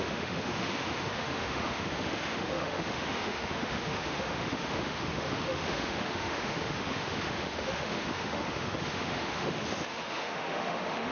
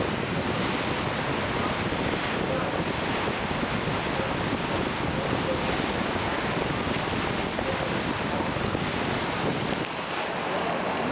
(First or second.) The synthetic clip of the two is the first